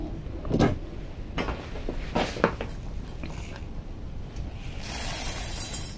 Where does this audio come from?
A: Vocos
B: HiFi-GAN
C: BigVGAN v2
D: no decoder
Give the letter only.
D